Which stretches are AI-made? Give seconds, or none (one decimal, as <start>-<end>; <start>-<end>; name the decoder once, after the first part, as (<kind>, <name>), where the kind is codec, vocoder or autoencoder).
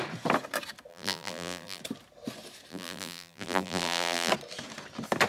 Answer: 0.9-1.8 (vocoder, BigVGAN v2); 2.7-4.3